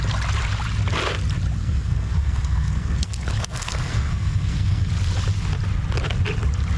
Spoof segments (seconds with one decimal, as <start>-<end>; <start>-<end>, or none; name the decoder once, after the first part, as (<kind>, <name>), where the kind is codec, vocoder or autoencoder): 1.6-4.9 (codec, SNAC)